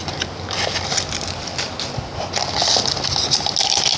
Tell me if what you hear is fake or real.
real